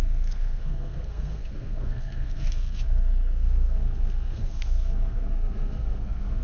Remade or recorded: remade